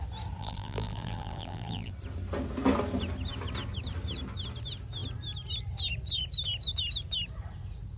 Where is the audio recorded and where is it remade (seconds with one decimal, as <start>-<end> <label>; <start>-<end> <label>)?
0.0-0.4 recorded; 0.4-1.9 remade; 1.9-8.0 recorded